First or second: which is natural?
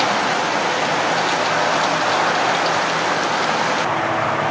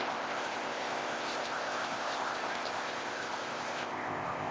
first